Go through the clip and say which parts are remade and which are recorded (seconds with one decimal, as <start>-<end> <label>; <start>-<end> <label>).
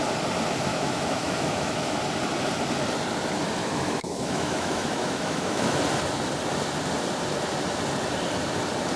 0.0-0.7 recorded; 0.7-2.0 remade; 2.0-3.6 recorded; 3.6-5.8 remade; 5.8-9.0 recorded